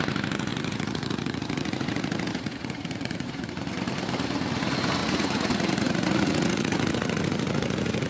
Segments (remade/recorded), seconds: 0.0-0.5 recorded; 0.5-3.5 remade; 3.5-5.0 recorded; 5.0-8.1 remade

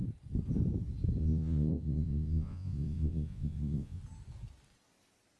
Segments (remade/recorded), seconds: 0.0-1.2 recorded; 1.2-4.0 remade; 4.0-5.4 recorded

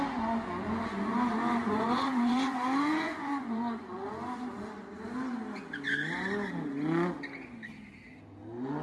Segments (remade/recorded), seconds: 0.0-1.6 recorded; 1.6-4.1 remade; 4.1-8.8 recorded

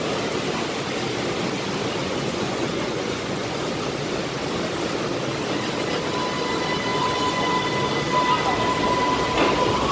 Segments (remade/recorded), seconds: 0.0-2.0 recorded; 2.0-3.6 remade; 3.6-6.9 recorded; 6.9-7.5 remade; 7.5-9.9 recorded

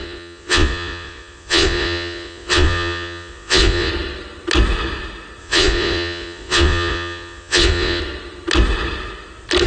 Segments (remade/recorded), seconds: 0.0-3.9 remade; 3.9-5.4 recorded; 5.4-8.0 remade; 8.0-9.7 recorded

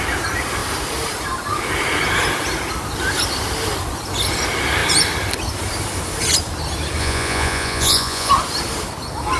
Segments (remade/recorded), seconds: 0.0-7.0 recorded; 7.0-8.3 remade; 8.3-9.4 recorded